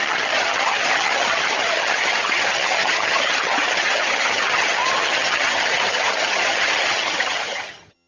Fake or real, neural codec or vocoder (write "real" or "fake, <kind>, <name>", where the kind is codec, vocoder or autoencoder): fake, vocoder, HiFi-GAN